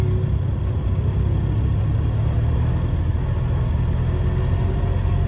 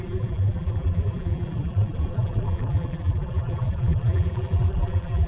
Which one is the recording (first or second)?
first